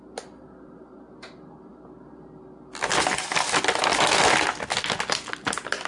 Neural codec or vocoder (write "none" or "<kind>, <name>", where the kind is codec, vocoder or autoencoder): none